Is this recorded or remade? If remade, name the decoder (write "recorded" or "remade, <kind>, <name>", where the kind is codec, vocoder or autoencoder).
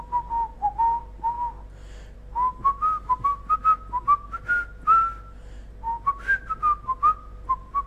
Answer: recorded